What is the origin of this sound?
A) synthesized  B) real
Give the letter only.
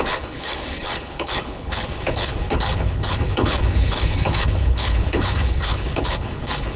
A